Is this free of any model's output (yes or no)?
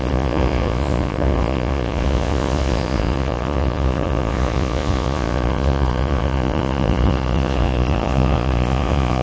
no